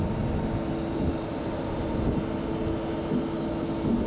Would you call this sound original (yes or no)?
yes